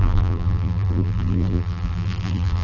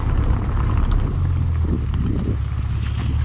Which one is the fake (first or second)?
first